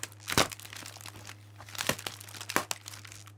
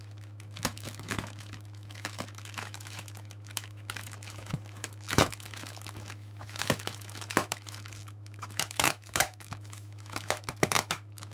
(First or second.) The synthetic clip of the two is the second